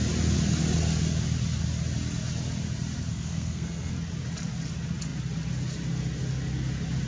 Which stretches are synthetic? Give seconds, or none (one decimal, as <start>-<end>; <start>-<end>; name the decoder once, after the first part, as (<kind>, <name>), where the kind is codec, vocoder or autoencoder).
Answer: 3.1-3.9 (codec, SNAC)